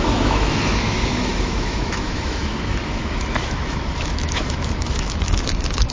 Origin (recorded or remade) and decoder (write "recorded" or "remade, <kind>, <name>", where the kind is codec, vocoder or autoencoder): remade, autoencoder, DAC-VAE